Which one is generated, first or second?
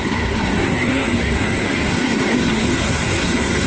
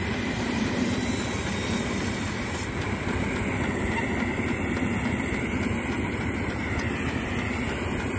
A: first